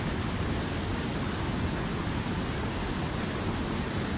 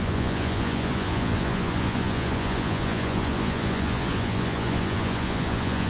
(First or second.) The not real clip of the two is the second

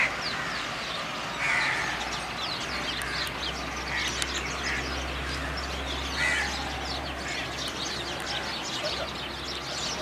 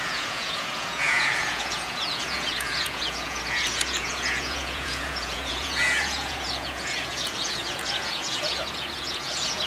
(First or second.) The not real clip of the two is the second